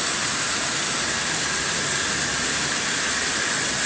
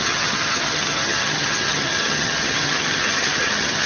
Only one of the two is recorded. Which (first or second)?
first